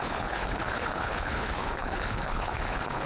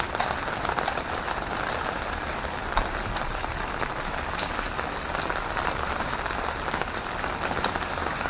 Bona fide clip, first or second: second